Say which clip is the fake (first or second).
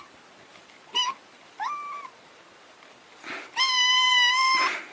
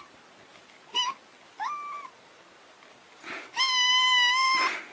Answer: first